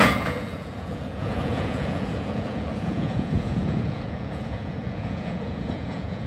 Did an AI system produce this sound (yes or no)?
yes